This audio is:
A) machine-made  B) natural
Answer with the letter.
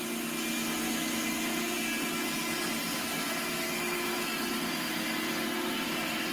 B